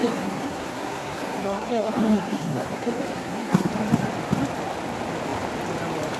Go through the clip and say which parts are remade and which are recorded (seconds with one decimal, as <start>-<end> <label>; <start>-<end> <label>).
0.0-3.7 remade; 3.7-6.2 recorded